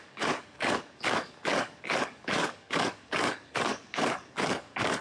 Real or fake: fake